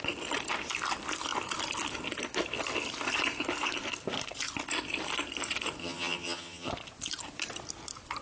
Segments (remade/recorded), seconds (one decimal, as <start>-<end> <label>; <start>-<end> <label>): 0.0-5.8 recorded; 5.8-6.7 remade; 6.7-8.2 recorded